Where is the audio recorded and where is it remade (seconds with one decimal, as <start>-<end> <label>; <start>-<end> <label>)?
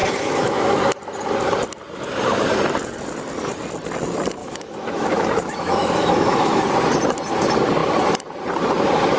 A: 0.0-0.8 remade; 0.8-4.4 recorded; 4.4-6.6 remade; 6.6-9.2 recorded